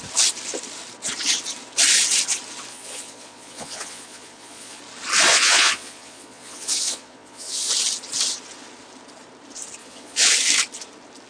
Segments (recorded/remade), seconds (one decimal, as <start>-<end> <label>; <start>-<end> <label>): 0.0-2.7 recorded; 2.7-4.8 remade; 4.8-5.3 recorded; 5.3-7.7 remade; 7.7-9.8 recorded; 9.8-10.3 remade; 10.3-11.3 recorded